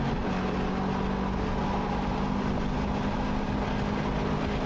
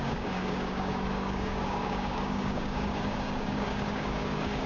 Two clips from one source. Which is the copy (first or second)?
second